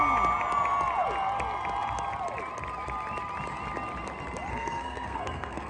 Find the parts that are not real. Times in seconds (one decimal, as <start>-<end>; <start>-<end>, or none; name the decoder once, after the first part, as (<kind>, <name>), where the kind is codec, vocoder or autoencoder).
4.5-5.7 (codec, SNAC)